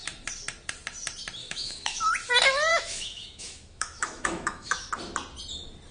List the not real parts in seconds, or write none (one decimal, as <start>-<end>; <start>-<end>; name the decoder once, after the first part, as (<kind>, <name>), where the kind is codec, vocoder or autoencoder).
1.4-2.1 (autoencoder, DAC-VAE); 2.7-4.9